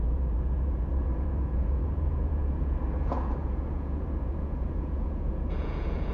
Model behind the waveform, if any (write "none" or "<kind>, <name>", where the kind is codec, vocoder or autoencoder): vocoder, Vocos